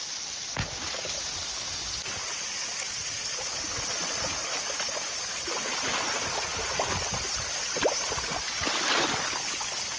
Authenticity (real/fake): real